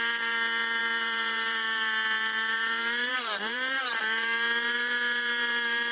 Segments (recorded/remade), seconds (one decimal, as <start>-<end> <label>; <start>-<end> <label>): 0.0-5.9 remade